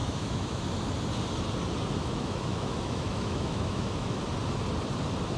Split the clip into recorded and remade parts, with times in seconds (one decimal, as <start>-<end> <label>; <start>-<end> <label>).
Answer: 0.0-0.6 remade; 0.6-2.0 recorded; 2.0-4.2 remade; 4.2-5.4 recorded